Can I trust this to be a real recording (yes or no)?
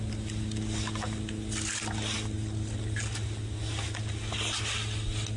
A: yes